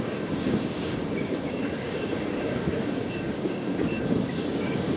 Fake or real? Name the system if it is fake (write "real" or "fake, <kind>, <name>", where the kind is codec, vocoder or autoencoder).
fake, codec, DAC